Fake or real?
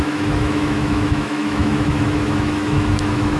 fake